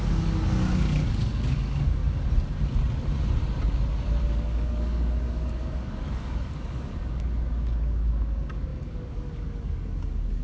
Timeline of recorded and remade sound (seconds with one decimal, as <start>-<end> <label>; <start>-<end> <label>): 0.0-2.0 remade; 2.0-4.2 recorded; 4.2-10.4 remade

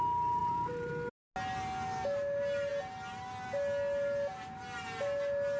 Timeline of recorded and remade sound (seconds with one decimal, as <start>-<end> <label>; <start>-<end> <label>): 0.0-0.4 recorded; 0.4-0.9 remade; 0.9-5.6 recorded

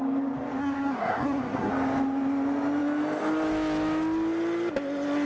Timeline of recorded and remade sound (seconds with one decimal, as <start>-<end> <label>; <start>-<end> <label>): 0.0-0.6 recorded; 0.6-1.7 remade; 1.7-5.3 recorded